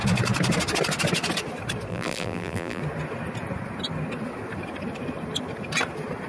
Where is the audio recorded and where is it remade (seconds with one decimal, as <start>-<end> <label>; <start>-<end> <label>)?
0.0-1.9 recorded; 1.9-2.8 remade; 2.8-6.3 recorded